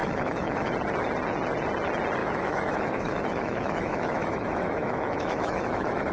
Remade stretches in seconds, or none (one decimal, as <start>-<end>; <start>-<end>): 0.0-0.7; 2.2-6.1